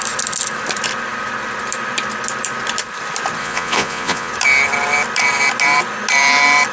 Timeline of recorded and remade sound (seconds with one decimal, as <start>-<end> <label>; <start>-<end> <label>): 0.0-3.4 recorded; 3.4-4.3 remade; 4.3-6.7 recorded